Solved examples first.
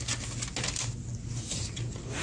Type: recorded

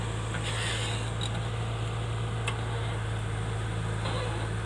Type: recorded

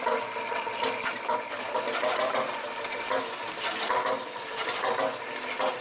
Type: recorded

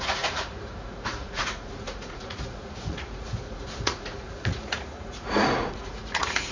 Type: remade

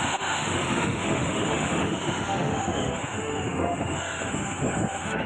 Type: remade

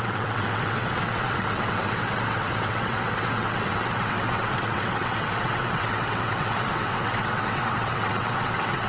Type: remade